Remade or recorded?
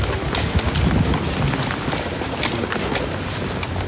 recorded